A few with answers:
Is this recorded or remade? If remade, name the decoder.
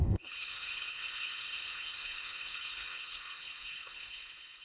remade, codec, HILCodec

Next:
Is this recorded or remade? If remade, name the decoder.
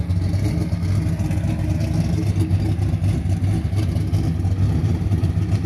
recorded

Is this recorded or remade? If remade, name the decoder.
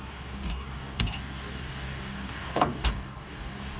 remade, codec, DAC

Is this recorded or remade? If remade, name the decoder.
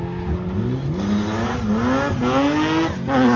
recorded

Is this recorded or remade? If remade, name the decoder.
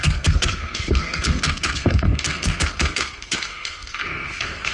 remade, codec, SNAC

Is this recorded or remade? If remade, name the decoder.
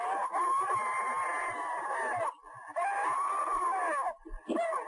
recorded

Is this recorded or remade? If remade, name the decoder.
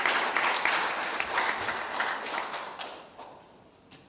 recorded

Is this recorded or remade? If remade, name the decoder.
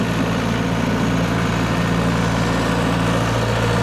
recorded